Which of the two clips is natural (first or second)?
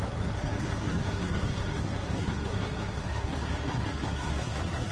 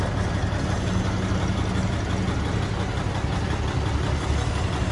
second